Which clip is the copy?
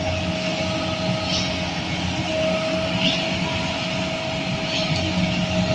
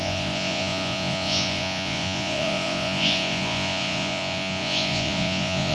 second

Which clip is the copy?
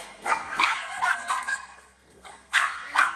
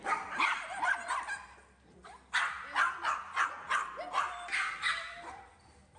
first